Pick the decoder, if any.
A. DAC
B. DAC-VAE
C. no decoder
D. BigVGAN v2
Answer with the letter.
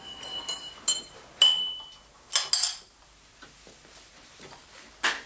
C